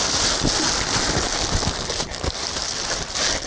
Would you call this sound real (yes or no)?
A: yes